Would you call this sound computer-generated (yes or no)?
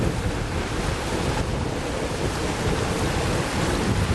no